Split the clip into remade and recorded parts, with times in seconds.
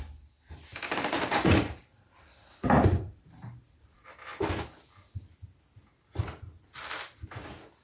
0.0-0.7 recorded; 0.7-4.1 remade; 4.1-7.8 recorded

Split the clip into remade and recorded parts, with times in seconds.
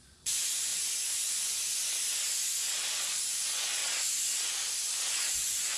0.0-1.8 remade; 1.8-3.1 recorded; 3.1-3.8 remade; 3.8-5.1 recorded; 5.1-5.8 remade